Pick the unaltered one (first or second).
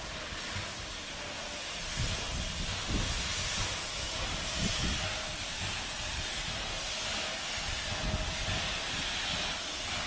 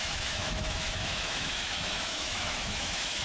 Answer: first